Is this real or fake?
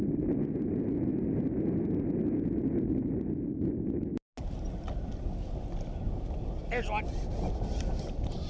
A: real